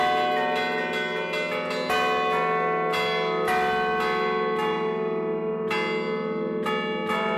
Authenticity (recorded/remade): recorded